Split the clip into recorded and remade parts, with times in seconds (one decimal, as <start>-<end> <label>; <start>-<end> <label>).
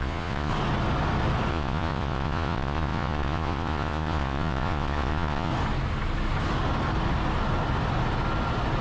0.0-0.5 remade; 0.5-1.5 recorded; 1.5-5.5 remade; 5.5-8.8 recorded